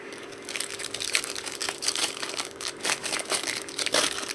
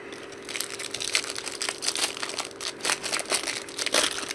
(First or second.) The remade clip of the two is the first